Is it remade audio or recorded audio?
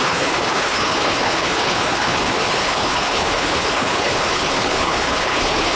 remade